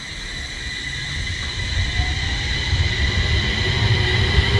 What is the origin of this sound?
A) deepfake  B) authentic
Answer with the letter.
B